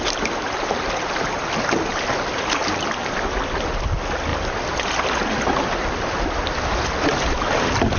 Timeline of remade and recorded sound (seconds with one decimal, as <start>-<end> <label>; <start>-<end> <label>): 0.0-8.0 recorded